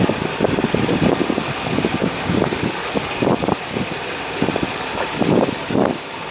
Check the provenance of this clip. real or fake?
real